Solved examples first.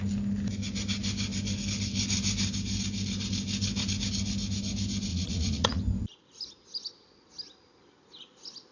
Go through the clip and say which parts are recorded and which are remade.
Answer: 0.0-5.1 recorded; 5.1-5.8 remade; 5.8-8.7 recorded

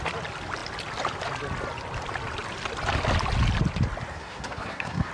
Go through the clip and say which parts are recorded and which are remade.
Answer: 0.0-4.1 recorded; 4.1-5.1 remade

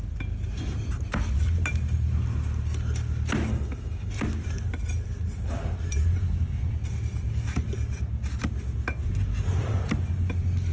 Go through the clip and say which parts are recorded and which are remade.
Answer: 0.0-3.5 recorded; 3.5-4.1 remade; 4.1-10.7 recorded

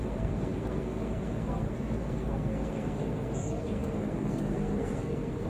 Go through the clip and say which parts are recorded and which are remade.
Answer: 0.0-5.5 remade

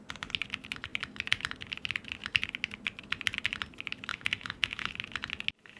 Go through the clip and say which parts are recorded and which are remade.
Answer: 0.0-4.1 recorded; 4.1-4.9 remade; 4.9-5.8 recorded